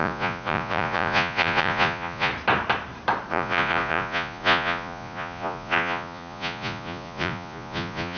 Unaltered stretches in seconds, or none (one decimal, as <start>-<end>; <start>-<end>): 2.3-3.3